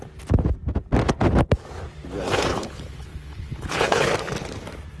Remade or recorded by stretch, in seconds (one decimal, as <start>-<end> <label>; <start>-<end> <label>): 0.0-2.5 recorded; 2.5-4.1 remade; 4.1-5.0 recorded